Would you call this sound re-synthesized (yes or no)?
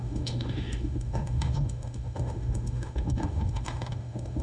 yes